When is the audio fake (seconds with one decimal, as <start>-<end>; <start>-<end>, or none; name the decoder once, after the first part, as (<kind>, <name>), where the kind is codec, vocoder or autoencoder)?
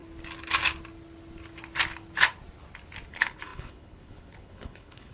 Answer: 3.1-5.1 (codec, HILCodec)